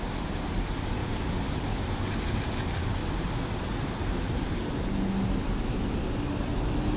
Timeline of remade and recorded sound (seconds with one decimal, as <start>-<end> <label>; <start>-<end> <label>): 0.0-7.0 recorded